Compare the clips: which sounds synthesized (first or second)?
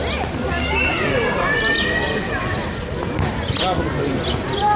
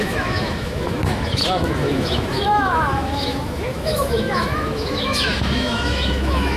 second